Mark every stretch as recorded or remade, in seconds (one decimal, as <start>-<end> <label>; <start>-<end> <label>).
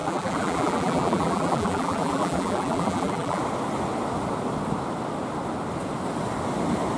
0.0-3.4 remade; 3.4-7.0 recorded